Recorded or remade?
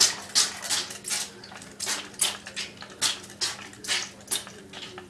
recorded